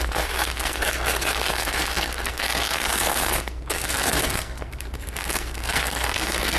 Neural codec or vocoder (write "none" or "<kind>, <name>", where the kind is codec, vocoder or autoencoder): codec, SNAC